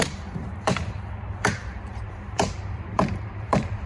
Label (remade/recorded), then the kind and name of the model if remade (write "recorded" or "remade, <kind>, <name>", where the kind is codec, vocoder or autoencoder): remade, vocoder, BigVGAN v2